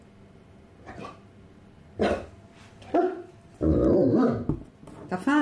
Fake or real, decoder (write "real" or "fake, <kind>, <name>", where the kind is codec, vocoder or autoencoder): real